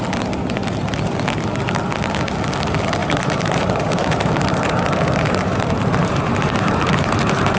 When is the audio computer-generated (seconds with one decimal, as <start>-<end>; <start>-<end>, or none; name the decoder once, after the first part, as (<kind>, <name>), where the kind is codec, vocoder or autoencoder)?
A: 3.0-7.6 (vocoder, BigVGAN v2)